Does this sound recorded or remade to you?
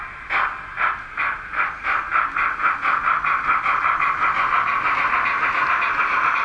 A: recorded